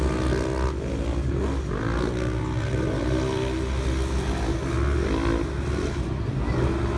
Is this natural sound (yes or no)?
yes